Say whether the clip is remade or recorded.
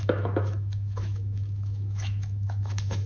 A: remade